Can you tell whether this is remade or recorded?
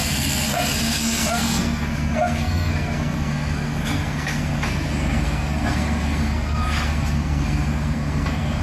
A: remade